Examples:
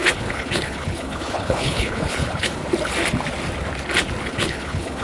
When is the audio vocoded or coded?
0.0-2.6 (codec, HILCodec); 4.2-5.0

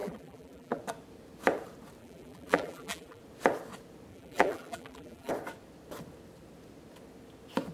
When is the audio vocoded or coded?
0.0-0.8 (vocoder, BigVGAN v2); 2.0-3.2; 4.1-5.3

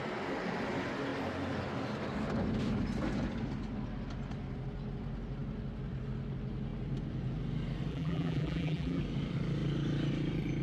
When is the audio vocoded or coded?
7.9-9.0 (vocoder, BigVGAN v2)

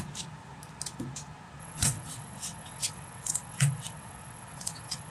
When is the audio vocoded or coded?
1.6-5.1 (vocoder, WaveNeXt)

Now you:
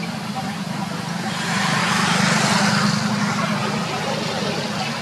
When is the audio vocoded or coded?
none

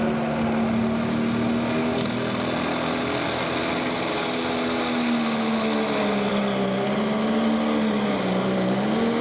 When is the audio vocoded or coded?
none